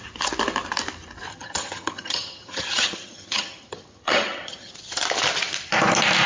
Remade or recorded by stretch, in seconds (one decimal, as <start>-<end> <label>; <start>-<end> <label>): 0.0-1.3 recorded; 1.3-4.7 remade; 4.7-6.3 recorded